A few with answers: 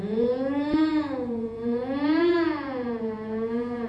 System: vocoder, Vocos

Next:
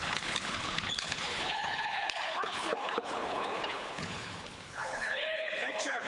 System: codec, HILCodec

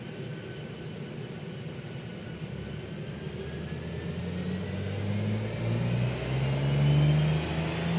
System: none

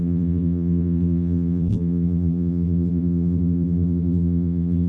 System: vocoder, BigVGAN v2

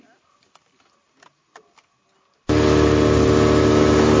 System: none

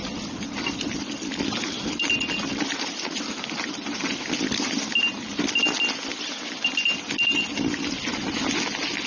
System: none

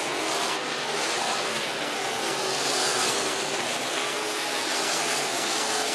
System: codec, SNAC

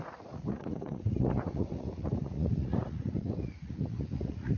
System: vocoder, Vocos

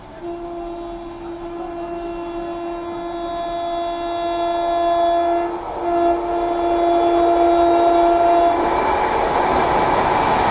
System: none